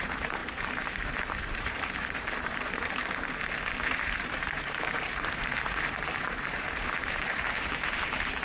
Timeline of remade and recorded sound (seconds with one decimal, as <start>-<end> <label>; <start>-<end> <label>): 0.0-3.0 remade; 3.0-3.8 recorded; 3.8-8.4 remade